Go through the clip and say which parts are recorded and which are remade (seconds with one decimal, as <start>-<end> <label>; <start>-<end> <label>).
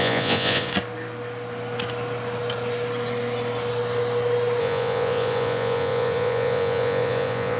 0.0-0.7 remade; 0.7-4.6 recorded; 4.6-7.6 remade